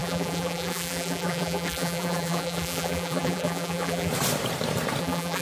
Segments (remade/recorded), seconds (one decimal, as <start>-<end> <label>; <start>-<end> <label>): 0.0-4.1 remade; 4.1-5.0 recorded; 5.0-5.4 remade